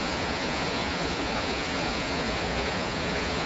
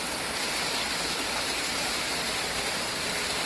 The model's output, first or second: first